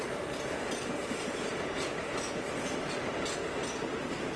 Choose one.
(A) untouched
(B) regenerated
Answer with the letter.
A